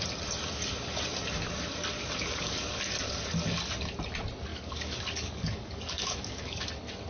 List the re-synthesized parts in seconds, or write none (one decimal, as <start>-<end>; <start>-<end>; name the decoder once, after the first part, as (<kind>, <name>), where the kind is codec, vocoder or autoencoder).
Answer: 2.3-2.8 (codec, DAC); 4.5-6.6